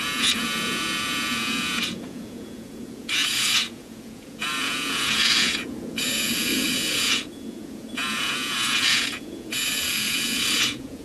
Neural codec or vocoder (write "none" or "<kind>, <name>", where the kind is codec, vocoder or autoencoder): vocoder, Vocos